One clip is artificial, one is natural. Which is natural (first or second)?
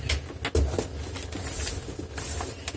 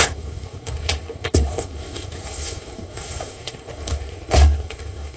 first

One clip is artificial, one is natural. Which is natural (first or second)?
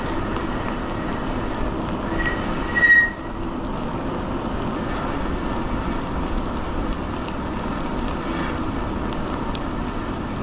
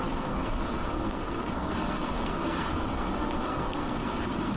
first